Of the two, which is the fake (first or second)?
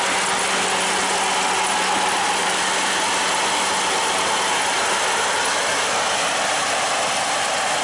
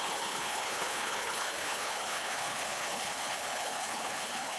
second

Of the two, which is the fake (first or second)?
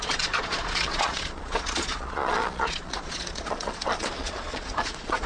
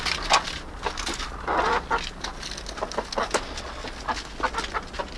first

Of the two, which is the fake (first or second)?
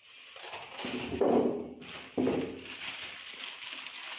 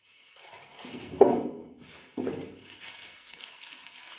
second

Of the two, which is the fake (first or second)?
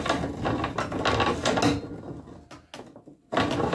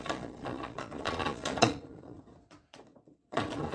second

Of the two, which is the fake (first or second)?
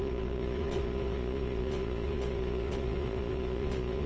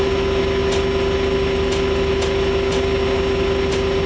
first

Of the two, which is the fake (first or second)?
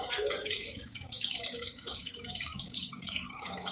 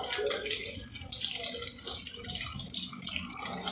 first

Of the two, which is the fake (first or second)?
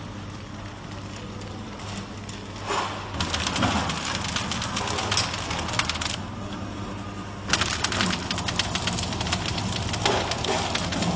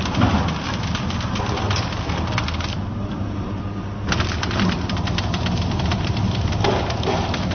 second